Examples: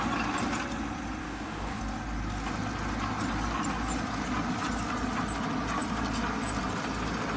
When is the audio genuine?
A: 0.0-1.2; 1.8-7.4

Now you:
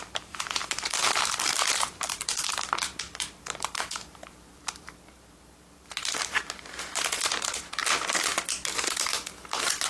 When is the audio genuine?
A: 7.8-9.9

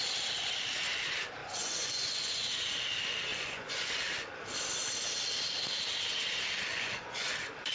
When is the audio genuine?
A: 0.0-1.4; 2.6-3.3; 3.9-6.7; 7.3-7.7

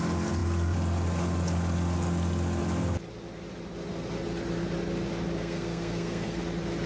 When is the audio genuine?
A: 0.0-5.4; 6.4-6.9

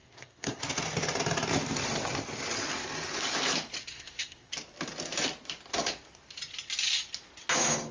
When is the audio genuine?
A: 0.6-3.8; 4.5-7.9

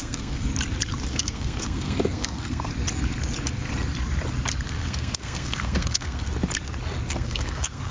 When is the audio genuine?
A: 0.5-1.1; 2.7-4.7; 6.3-7.1